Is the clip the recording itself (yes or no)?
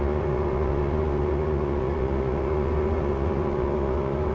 no